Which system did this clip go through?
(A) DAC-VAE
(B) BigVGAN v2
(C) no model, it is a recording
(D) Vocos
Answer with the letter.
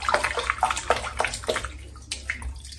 C